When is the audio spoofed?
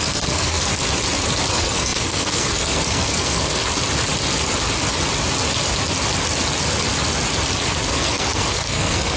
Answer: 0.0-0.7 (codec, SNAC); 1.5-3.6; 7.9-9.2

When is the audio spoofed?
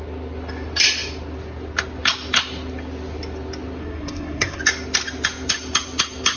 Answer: 3.8-4.6 (codec, SNAC)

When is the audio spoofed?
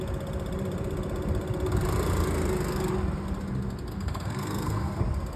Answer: 3.9-5.0 (codec, SNAC)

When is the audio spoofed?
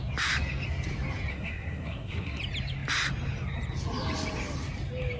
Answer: 1.3-2.4 (codec, SNAC)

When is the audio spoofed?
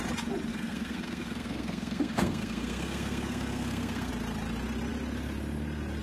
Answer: 0.5-4.1 (codec, SNAC)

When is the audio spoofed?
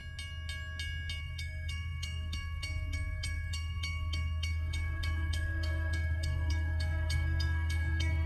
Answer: 1.2-8.3 (codec, SNAC)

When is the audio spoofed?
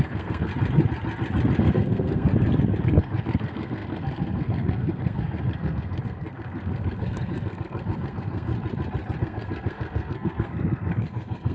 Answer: 0.0-0.5 (codec, SNAC); 1.6-2.3; 2.8-8.5; 9.2-11.5